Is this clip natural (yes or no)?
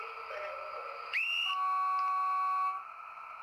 yes